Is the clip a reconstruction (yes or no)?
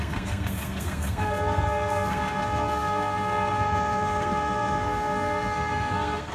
yes